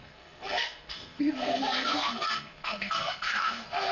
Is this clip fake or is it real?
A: fake